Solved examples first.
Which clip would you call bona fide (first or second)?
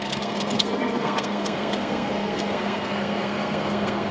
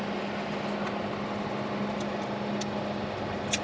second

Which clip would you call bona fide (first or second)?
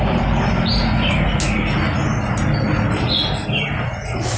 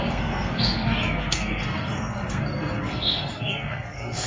first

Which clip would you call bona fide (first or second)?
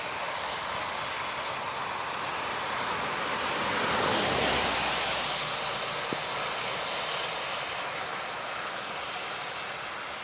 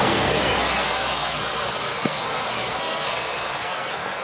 first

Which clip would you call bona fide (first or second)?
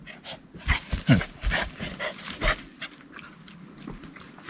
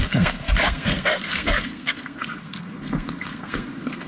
first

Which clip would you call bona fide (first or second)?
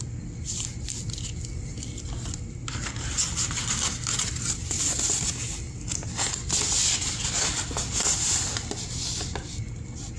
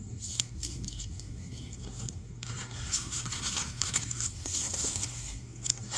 first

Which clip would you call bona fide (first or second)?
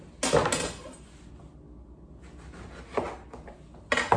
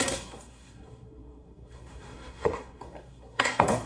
first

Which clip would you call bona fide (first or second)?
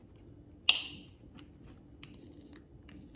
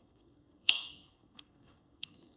first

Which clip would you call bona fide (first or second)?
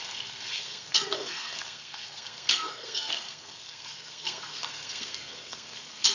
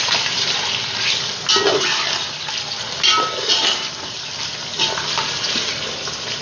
second